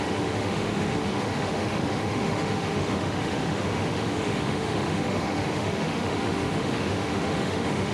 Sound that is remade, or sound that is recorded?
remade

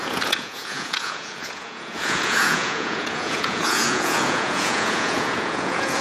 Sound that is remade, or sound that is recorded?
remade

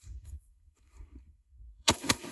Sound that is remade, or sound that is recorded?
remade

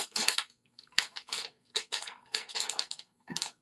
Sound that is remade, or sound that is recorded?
remade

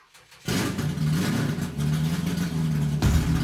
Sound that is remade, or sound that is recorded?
recorded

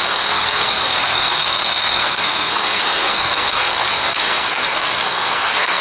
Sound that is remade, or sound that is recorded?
remade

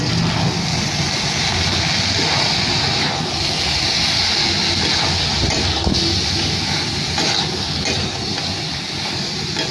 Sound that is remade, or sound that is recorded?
recorded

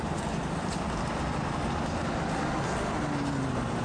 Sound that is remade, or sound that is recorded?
recorded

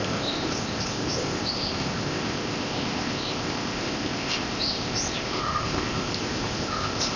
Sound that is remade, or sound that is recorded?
remade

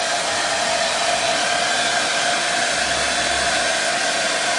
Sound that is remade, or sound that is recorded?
recorded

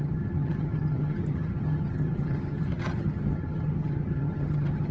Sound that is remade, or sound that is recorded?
remade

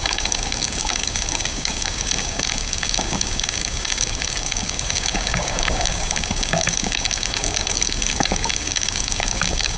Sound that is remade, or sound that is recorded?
remade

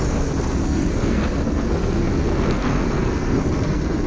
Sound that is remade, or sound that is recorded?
remade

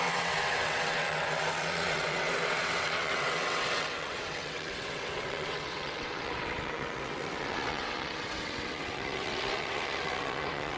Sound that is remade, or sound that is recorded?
remade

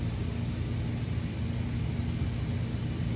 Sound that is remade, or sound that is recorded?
recorded